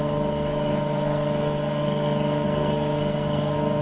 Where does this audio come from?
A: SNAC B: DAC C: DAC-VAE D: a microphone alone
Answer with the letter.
A